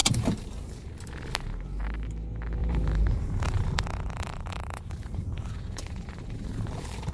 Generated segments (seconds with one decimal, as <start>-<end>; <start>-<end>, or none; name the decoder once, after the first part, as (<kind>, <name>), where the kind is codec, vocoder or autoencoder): 0.0-0.9 (vocoder, BigVGAN v2); 2.6-7.1